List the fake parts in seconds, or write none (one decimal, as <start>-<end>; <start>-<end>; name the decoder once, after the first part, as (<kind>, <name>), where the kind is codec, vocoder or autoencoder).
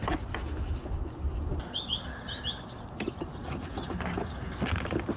none